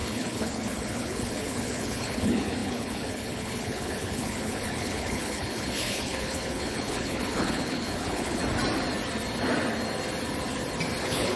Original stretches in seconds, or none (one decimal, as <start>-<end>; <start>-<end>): 8.4-11.0